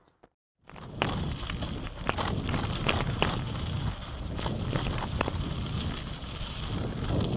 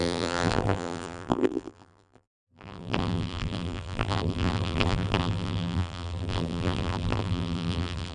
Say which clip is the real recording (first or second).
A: first